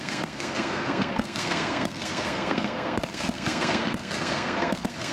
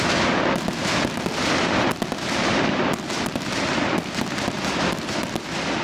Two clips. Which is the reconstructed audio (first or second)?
first